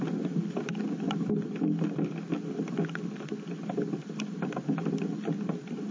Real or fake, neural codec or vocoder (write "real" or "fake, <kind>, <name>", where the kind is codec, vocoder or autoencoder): real